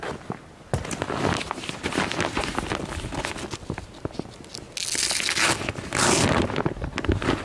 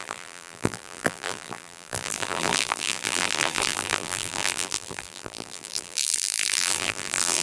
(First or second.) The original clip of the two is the first